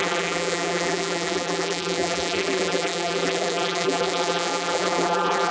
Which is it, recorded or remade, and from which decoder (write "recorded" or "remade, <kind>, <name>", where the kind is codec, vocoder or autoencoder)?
remade, vocoder, BigVGAN v2